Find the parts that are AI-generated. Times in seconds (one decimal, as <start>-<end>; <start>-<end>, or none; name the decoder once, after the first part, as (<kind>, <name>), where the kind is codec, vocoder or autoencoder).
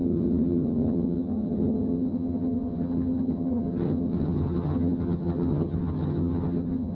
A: 0.0-6.9 (vocoder, HiFi-GAN)